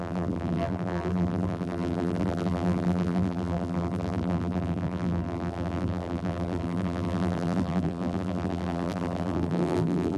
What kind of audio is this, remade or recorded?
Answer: remade